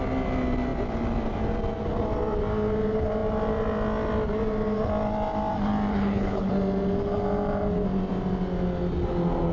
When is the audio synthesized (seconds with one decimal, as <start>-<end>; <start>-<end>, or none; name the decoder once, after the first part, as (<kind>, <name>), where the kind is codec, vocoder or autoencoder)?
5.9-6.5 (codec, HILCodec)